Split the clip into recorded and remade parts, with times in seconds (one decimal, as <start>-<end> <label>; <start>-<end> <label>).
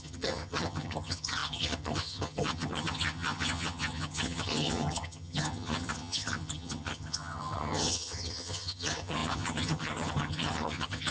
0.0-11.1 remade